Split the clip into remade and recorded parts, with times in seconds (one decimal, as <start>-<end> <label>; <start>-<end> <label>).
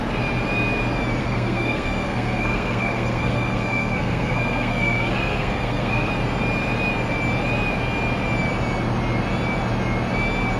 0.0-1.2 recorded; 1.2-6.1 remade; 6.1-10.6 recorded